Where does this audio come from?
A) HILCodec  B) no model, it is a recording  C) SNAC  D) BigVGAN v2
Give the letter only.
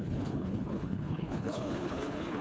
A